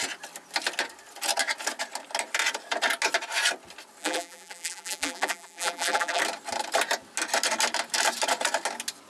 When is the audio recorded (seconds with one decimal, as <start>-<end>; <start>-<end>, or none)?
0.0-4.0; 6.2-9.1